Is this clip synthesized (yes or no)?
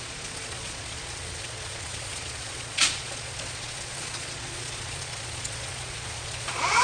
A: yes